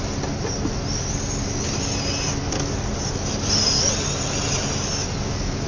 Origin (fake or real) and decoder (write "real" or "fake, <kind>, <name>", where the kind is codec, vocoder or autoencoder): real